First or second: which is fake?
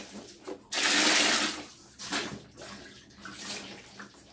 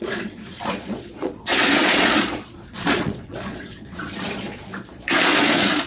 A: second